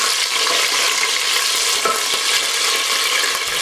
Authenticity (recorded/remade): recorded